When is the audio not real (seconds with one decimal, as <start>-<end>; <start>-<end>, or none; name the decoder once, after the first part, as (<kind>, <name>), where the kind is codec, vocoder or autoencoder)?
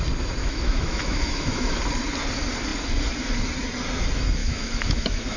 0.4-1.8 (autoencoder, DAC-VAE); 4.4-5.4